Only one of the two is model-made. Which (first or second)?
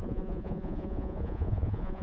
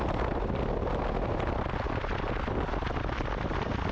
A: first